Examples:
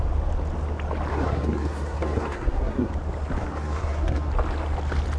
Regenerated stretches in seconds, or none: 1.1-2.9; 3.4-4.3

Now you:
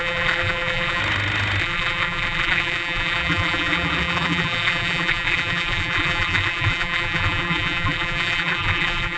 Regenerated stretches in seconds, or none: 0.0-1.0; 1.6-9.2

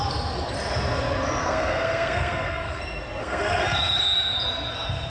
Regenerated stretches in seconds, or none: 1.4-2.8; 3.2-4.0

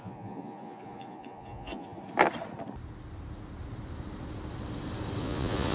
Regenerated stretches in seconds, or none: 0.0-2.0; 5.2-5.7

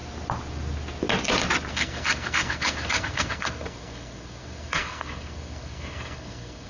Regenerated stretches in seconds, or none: 1.7-6.7

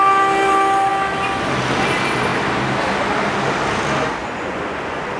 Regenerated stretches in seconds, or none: 4.2-5.2

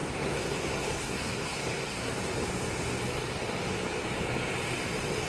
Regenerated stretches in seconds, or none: 0.0-2.1

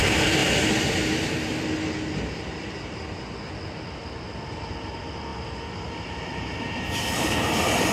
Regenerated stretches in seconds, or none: none